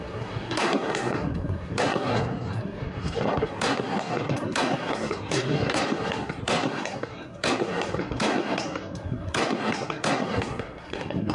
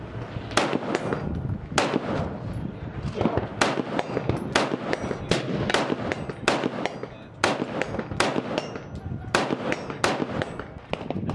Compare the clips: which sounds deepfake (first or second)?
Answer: first